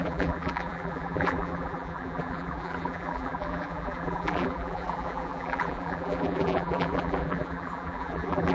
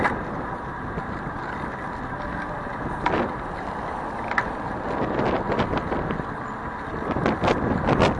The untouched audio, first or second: second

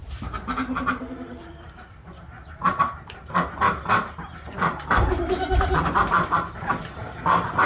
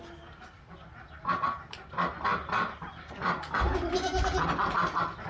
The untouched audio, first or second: second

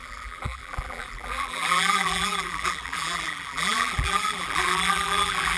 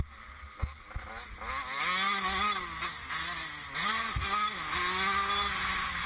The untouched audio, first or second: second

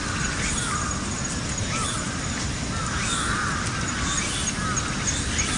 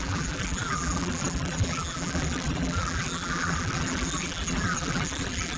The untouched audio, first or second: first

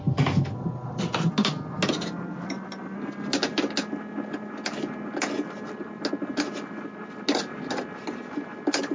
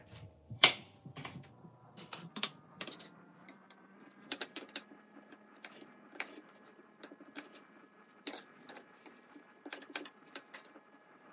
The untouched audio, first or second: first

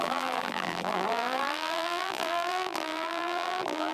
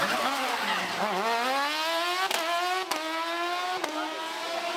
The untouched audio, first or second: second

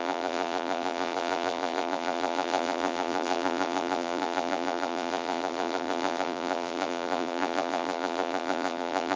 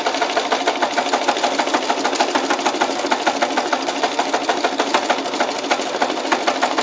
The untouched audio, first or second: second